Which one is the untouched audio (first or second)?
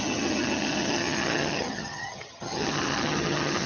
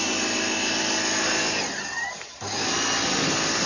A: second